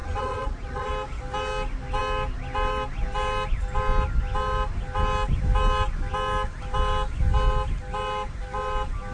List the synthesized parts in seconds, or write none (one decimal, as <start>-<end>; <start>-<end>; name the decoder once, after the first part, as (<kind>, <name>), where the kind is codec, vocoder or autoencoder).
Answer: 0.0-0.9 (vocoder, Vocos)